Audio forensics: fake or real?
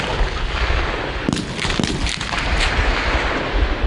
real